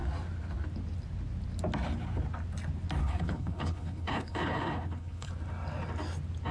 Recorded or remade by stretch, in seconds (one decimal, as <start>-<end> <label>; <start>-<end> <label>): 0.0-3.0 recorded; 3.0-5.3 remade; 5.3-6.5 recorded